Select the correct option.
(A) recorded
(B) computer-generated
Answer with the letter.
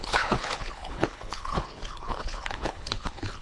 B